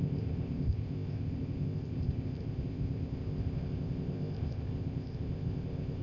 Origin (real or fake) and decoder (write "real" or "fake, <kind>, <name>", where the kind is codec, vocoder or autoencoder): fake, codec, ZipCodec